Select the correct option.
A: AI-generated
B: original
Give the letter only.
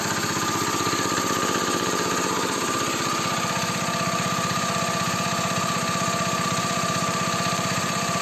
A